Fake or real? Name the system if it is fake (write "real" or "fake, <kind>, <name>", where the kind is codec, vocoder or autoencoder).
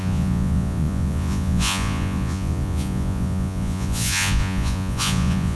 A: fake, vocoder, Vocos